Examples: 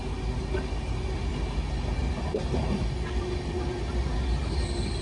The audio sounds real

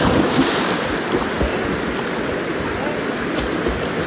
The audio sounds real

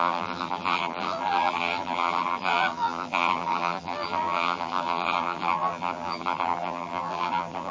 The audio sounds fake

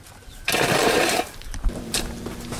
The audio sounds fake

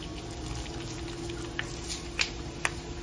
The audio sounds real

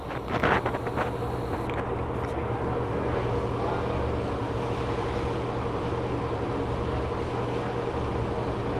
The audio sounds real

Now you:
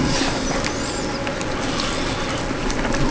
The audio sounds fake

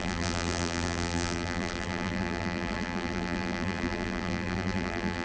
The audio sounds fake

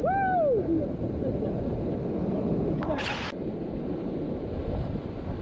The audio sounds real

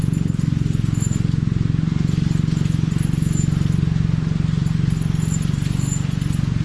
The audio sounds real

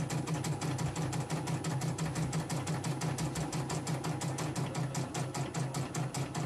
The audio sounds real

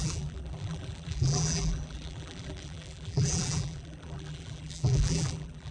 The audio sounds fake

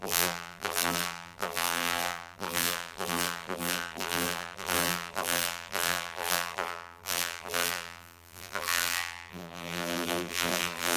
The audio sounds fake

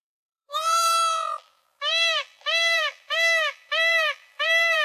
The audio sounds fake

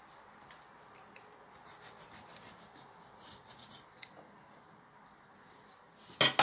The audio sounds real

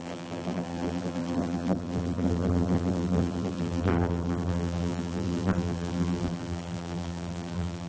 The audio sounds fake